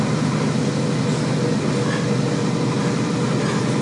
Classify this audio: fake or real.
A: real